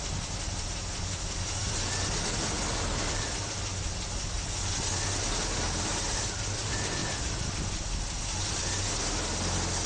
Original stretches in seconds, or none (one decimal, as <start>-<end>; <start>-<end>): 0.0-9.9